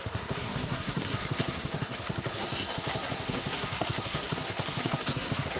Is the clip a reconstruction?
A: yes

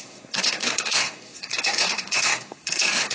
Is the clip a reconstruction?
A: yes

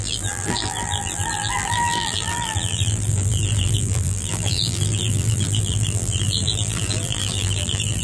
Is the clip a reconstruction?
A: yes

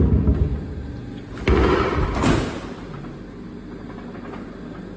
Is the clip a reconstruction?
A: no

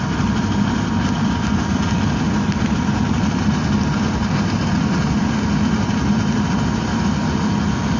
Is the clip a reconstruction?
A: no